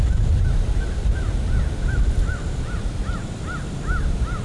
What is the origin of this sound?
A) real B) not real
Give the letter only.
A